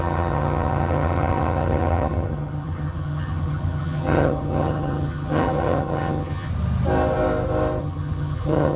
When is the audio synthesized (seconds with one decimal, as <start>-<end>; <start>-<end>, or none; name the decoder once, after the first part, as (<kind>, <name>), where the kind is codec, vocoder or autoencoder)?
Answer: 0.0-6.5 (vocoder, HiFi-GAN); 7.8-8.8